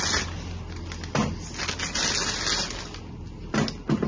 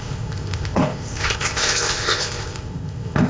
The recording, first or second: first